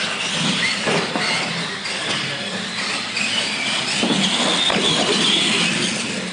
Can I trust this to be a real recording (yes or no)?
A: yes